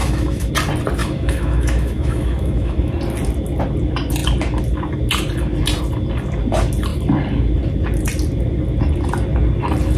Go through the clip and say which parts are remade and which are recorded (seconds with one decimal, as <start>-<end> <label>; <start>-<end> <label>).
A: 0.0-0.5 remade; 0.5-1.0 recorded; 1.0-2.9 remade; 2.9-10.0 recorded